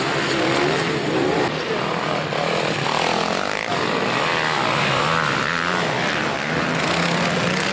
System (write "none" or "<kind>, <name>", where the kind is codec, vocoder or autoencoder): none